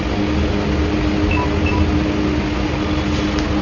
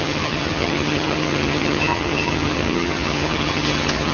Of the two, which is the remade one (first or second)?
second